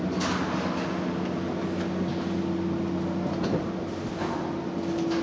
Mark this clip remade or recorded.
recorded